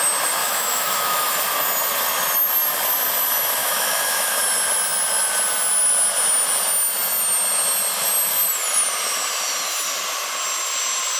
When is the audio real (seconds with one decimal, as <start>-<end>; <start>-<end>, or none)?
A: 0.0-0.4; 1.3-3.6; 4.4-11.2